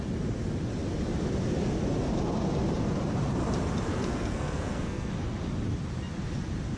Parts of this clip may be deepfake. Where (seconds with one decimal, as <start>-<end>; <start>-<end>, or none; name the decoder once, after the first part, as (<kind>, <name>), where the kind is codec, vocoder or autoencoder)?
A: 3.9-5.1 (codec, SNAC)